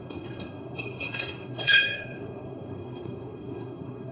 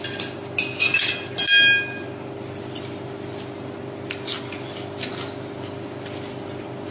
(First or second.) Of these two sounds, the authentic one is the second